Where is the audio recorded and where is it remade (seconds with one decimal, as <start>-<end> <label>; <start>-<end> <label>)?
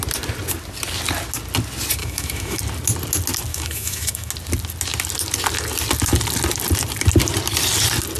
0.0-2.0 recorded; 2.0-2.6 remade; 2.6-3.5 recorded; 3.5-4.3 remade; 4.3-8.2 recorded